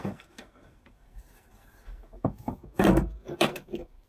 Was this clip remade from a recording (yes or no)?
yes